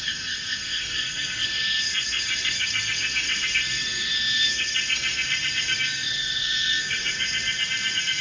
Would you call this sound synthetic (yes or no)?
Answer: yes